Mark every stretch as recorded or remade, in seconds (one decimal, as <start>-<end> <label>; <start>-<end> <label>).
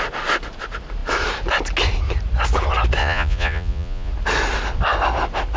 0.0-3.0 recorded; 3.0-4.1 remade; 4.1-5.6 recorded